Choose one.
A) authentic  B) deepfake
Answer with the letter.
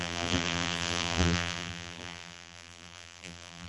B